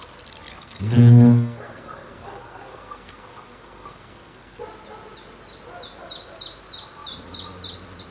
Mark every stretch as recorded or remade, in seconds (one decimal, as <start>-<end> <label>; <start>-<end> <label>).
0.0-0.5 recorded; 0.5-4.6 remade; 4.6-8.1 recorded